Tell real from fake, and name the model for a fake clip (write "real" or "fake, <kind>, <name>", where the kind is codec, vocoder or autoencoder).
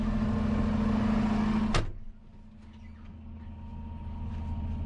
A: real